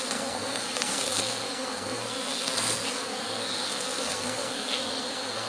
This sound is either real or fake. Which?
fake